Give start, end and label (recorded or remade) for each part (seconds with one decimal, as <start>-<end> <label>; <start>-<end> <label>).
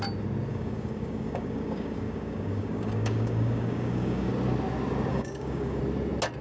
0.0-0.5 recorded; 0.5-4.3 remade; 4.3-5.1 recorded; 5.1-5.8 remade; 5.8-6.4 recorded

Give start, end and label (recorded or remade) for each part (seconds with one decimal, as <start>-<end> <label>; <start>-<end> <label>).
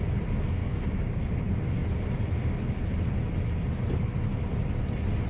0.0-0.6 recorded; 0.6-1.2 remade; 1.2-5.3 recorded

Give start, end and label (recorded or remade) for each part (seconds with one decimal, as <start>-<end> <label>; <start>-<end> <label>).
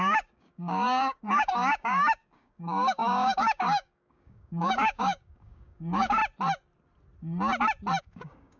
0.0-6.2 remade; 6.2-8.0 recorded; 8.0-8.6 remade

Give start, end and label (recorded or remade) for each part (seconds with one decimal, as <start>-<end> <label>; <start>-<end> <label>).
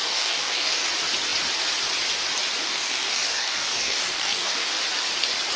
0.0-0.9 remade; 0.9-2.6 recorded; 2.6-4.7 remade; 4.7-5.6 recorded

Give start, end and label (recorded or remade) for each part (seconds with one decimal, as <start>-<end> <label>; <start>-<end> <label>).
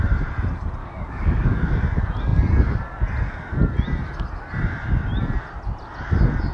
0.0-0.8 recorded; 0.8-1.8 remade; 1.8-6.5 recorded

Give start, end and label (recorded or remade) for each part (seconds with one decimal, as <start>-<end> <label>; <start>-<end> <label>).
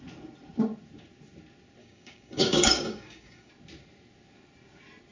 0.0-1.8 recorded; 1.8-3.5 remade; 3.5-5.1 recorded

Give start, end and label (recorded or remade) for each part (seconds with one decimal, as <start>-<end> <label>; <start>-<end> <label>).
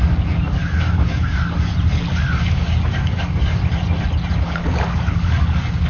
0.0-1.7 remade; 1.7-2.3 recorded; 2.3-3.6 remade; 3.6-4.4 recorded; 4.4-5.9 remade